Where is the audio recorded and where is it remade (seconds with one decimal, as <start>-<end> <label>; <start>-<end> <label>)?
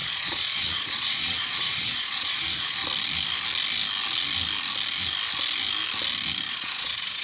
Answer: 0.0-2.8 remade; 2.8-6.5 recorded; 6.5-7.2 remade